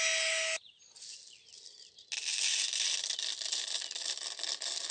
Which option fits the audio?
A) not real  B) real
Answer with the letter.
B